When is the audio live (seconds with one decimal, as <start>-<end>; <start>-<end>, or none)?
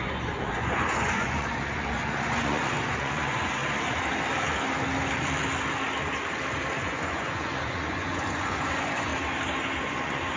3.6-6.8; 9.1-9.8